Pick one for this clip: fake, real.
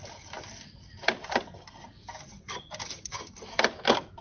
real